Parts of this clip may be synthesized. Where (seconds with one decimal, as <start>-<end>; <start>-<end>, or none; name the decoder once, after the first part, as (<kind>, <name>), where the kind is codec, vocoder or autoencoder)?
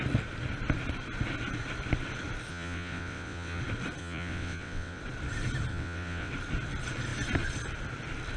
2.5-3.6 (vocoder, WaveNeXt); 4.0-5.0; 5.7-6.3